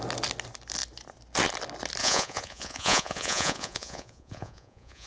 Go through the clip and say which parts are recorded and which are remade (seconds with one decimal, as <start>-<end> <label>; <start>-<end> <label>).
0.0-2.0 recorded; 2.0-5.1 remade

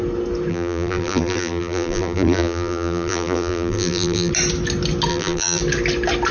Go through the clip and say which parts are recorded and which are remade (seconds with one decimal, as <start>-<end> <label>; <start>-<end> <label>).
0.0-0.5 recorded; 0.5-4.3 remade; 4.3-5.1 recorded; 5.1-5.6 remade; 5.6-6.3 recorded